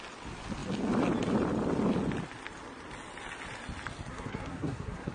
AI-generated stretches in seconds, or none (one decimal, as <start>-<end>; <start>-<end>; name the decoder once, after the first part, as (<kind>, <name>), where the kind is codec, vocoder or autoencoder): 4.1-5.1 (codec, SNAC)